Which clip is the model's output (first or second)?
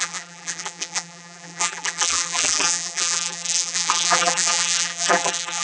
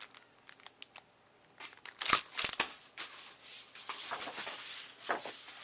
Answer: first